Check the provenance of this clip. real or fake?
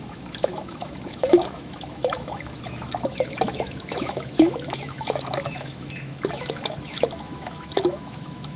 fake